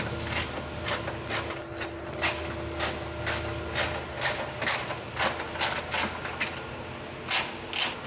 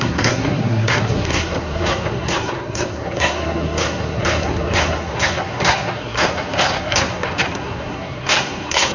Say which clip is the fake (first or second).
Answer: second